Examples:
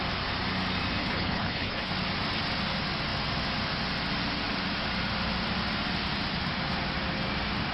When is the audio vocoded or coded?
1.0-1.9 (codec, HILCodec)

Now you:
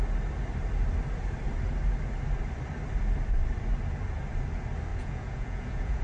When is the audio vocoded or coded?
4.9-6.0 (vocoder, Vocos)